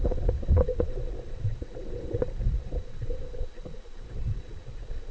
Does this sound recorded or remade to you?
remade